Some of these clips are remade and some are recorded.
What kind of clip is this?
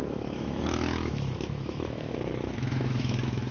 remade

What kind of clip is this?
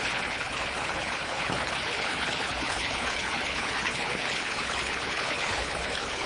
remade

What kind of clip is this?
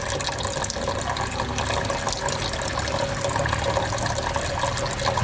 recorded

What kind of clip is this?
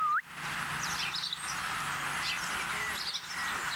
recorded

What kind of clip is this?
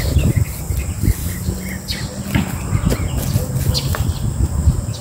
recorded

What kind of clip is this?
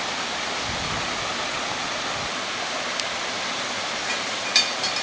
recorded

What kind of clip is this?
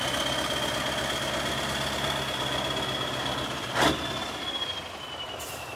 recorded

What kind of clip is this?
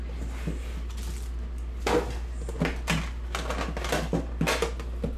recorded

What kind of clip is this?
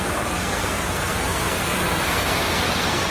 remade